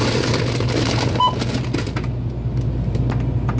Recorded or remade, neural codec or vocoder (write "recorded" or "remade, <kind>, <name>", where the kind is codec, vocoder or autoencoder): recorded